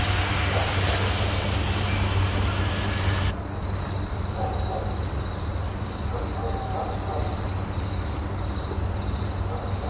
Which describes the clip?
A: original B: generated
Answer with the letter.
A